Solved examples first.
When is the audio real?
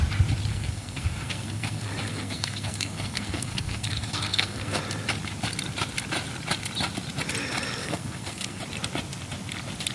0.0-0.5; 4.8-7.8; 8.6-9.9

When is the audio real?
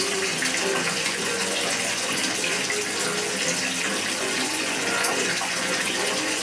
0.4-0.9; 2.2-4.2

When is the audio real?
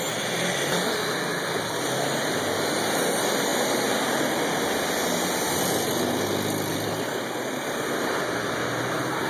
0.0-9.3